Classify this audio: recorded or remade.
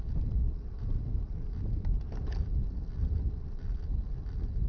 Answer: recorded